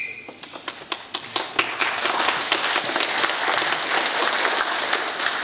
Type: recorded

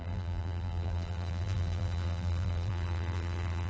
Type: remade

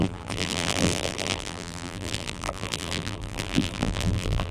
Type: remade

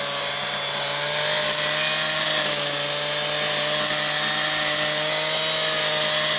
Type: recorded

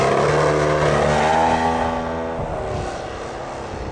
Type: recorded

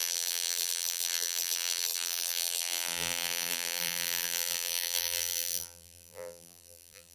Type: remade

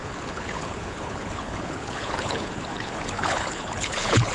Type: remade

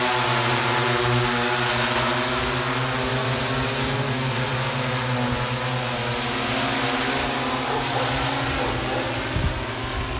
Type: recorded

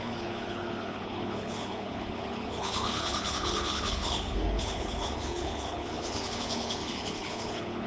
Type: remade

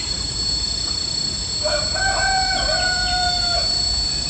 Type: remade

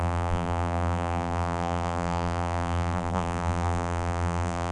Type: remade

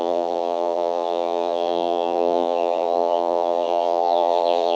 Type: remade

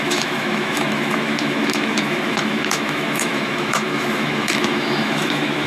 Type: remade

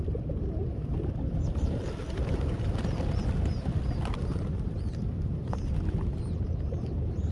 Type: remade